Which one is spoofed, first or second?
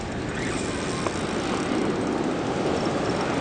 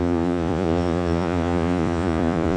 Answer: second